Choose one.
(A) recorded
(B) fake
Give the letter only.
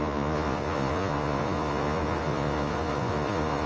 B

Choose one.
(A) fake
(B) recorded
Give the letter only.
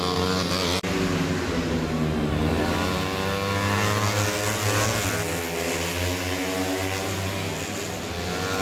B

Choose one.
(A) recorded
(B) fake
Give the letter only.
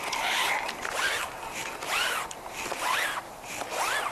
A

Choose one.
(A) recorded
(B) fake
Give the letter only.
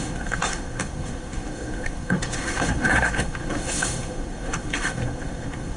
B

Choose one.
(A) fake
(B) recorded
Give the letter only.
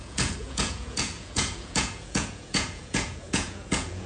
A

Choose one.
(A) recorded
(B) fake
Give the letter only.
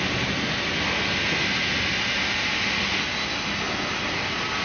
A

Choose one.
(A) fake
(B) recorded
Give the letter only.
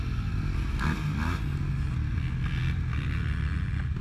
B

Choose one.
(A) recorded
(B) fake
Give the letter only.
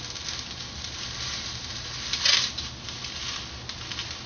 A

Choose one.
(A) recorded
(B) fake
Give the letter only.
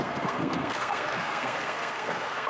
B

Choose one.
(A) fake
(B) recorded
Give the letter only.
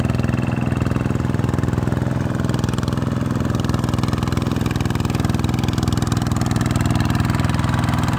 B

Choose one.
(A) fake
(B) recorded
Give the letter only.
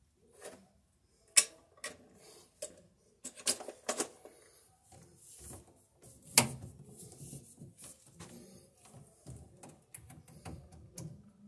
B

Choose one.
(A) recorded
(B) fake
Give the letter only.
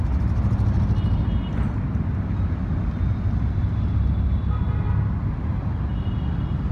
A